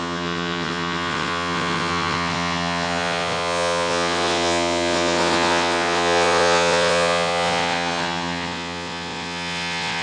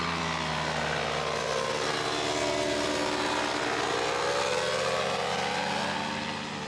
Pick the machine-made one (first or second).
first